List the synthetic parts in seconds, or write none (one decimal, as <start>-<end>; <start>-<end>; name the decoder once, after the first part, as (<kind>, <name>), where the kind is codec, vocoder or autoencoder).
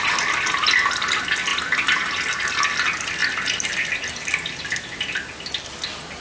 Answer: 1.5-2.0 (vocoder, BigVGAN v2); 3.2-5.2